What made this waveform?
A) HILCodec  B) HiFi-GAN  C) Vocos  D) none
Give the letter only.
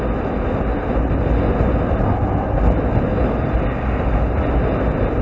D